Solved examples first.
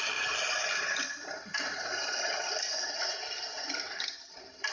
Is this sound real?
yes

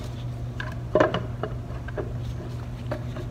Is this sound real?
yes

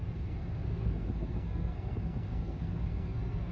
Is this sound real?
no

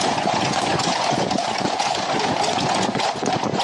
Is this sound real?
no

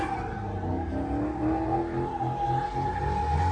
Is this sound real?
yes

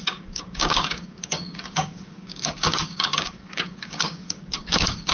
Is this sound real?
no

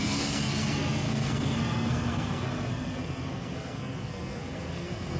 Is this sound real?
no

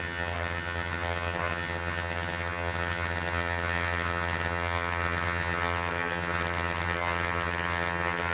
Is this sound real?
no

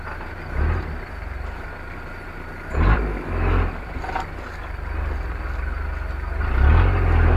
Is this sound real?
yes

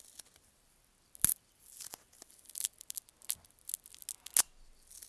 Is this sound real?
yes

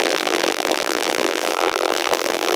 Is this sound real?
no